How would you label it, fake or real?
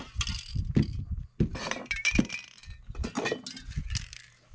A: real